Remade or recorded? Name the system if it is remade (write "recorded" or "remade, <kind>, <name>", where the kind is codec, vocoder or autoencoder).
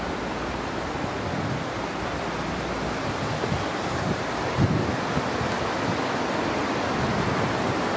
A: recorded